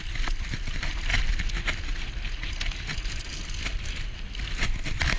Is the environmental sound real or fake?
real